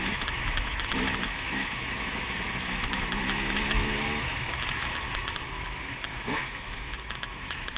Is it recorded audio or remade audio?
remade